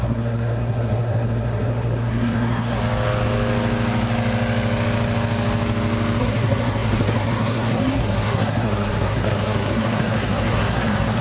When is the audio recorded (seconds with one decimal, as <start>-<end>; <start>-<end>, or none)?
2.8-6.2